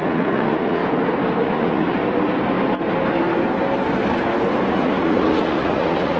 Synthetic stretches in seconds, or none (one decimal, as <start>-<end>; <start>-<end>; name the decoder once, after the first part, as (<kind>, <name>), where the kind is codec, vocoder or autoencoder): 0.0-0.8 (vocoder, Vocos); 1.4-2.0; 4.7-6.2